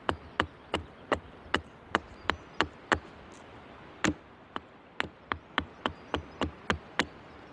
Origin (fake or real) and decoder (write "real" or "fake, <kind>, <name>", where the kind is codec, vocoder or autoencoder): real